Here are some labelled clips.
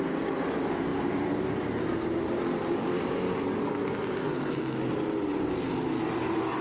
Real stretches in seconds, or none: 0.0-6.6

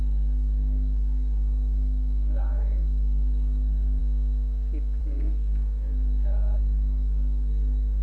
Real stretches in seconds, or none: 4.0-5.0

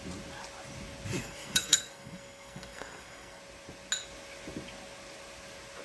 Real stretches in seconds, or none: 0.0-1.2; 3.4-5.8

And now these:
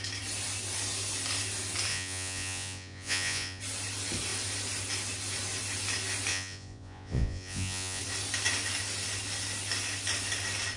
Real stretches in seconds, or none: 0.0-1.9; 3.6-6.3; 8.0-10.8

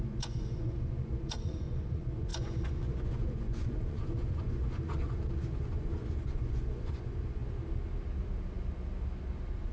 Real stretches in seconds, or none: 7.4-9.7

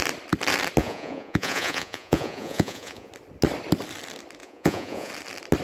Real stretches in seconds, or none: 0.0-0.8; 3.1-4.4; 5.1-5.6